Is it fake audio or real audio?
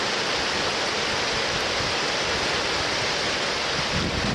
real